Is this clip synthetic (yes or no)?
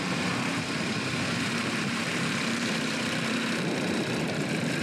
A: yes